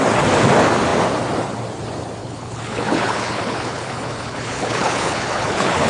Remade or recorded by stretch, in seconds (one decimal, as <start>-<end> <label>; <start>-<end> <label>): 0.0-2.2 recorded; 2.2-5.9 remade